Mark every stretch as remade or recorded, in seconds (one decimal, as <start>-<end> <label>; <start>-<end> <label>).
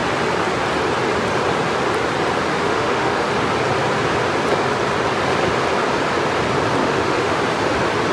0.0-2.5 recorded; 2.5-3.3 remade; 3.3-6.8 recorded; 6.8-7.4 remade; 7.4-8.1 recorded